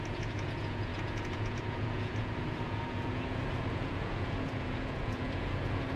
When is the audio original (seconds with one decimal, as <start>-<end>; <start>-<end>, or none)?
none